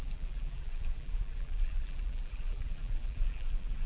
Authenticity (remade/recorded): remade